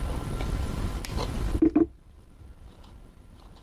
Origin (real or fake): real